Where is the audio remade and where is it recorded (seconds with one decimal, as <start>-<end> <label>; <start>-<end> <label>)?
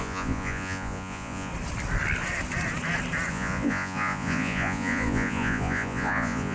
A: 0.0-1.5 remade; 1.5-3.3 recorded; 3.3-6.5 remade